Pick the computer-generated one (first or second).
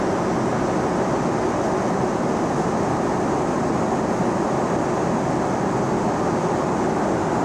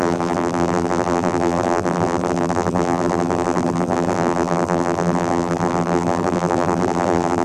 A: second